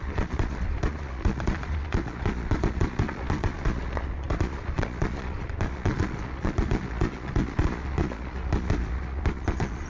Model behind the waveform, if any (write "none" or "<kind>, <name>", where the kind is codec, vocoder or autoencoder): vocoder, Vocos